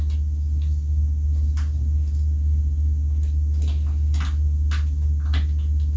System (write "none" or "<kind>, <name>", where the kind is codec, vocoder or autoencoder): none